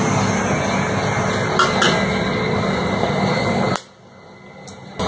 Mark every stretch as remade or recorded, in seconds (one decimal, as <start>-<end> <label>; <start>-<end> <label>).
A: 0.0-5.1 recorded